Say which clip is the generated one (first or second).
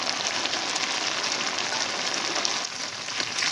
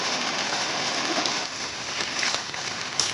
second